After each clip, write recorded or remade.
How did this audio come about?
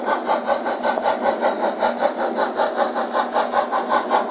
recorded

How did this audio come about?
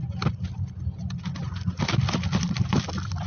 recorded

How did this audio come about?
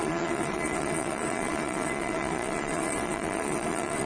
remade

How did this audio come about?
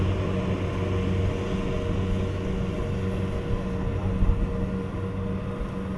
recorded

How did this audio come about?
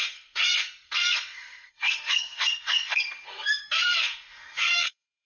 remade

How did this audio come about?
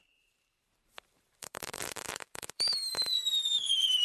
remade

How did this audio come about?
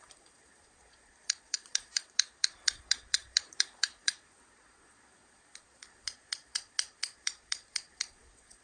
remade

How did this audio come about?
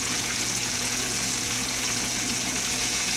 remade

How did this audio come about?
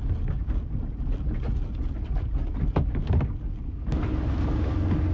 recorded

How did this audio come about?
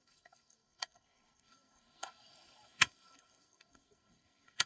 remade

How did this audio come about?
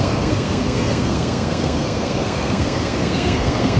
remade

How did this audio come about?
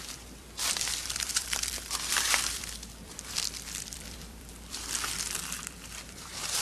remade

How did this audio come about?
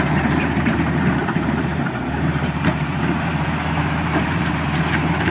remade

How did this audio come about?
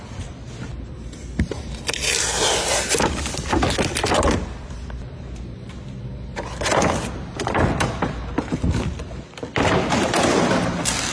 recorded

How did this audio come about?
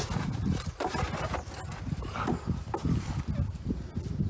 recorded